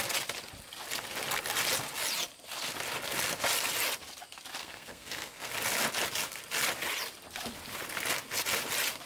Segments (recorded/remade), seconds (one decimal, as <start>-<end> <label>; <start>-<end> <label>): 0.0-4.6 recorded; 4.6-5.5 remade; 5.5-9.1 recorded